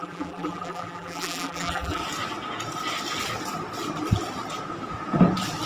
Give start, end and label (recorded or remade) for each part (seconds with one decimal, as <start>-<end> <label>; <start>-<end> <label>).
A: 0.0-2.0 remade; 2.0-5.7 recorded